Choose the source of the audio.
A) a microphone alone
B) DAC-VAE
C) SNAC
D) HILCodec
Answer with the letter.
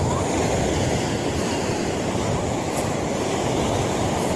A